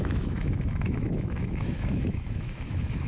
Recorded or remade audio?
remade